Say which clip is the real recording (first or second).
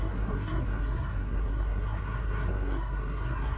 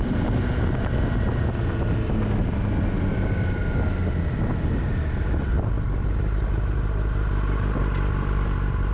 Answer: second